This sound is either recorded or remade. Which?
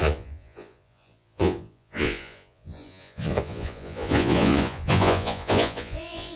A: remade